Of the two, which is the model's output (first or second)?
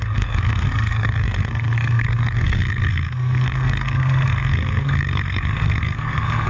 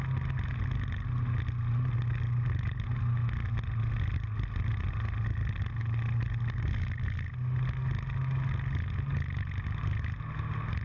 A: first